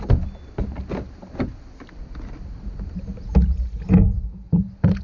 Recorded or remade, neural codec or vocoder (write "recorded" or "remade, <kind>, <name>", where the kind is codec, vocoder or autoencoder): recorded